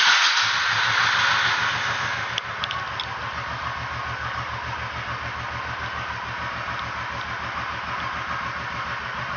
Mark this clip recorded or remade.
recorded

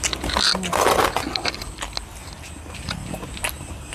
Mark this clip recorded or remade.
recorded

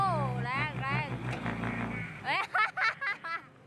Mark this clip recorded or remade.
recorded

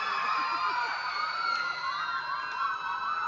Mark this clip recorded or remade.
recorded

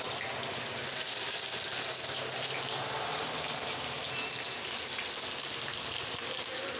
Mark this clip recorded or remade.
recorded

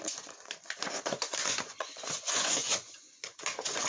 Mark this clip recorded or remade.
remade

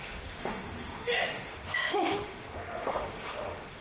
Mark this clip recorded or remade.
remade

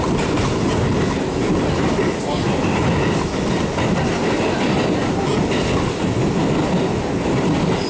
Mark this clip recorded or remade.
recorded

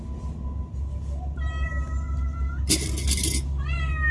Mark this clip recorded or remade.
recorded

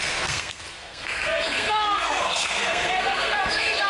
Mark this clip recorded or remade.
remade